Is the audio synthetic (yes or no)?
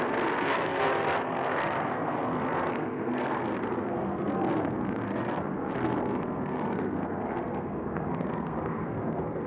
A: yes